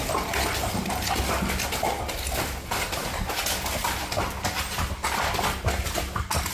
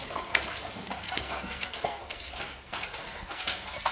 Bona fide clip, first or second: first